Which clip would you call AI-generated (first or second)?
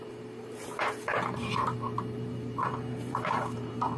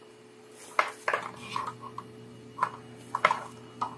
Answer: first